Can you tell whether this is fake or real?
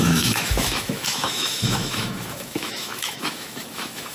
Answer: fake